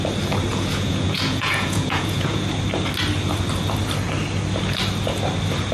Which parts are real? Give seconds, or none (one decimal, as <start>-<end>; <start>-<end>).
0.0-0.5; 2.5-5.7